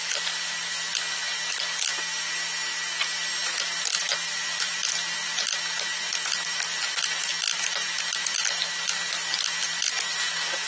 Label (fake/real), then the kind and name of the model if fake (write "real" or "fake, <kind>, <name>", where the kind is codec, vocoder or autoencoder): real